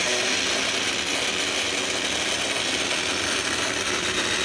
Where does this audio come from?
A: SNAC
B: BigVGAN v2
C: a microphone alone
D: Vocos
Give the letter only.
C